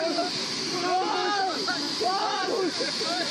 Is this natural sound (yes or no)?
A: yes